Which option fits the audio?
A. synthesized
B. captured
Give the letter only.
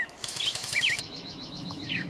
A